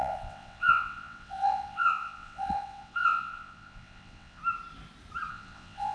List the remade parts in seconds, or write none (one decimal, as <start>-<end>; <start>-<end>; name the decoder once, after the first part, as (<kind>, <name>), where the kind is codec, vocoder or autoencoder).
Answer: 0.0-4.4 (vocoder, WaveNeXt); 5.3-5.9